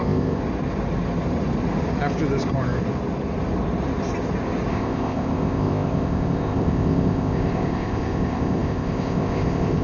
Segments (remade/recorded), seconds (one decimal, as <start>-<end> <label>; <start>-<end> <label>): 0.0-0.4 remade; 0.4-4.7 recorded; 4.7-9.8 remade